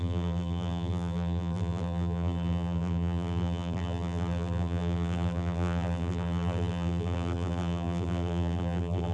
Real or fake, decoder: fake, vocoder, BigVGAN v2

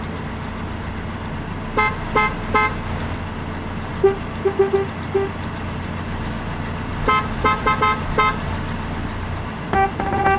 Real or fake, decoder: real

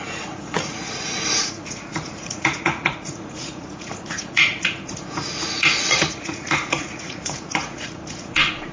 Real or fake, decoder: fake, vocoder, Vocos